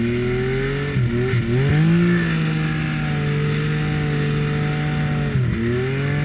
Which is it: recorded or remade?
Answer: recorded